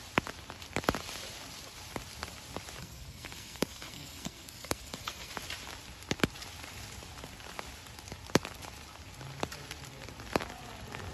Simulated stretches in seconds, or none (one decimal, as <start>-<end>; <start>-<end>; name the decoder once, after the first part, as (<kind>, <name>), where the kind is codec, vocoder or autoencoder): 2.8-5.3 (codec, SNAC)